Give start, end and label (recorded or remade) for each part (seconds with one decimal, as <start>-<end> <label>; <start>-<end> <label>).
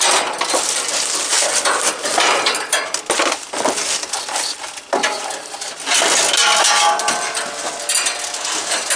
0.0-9.0 recorded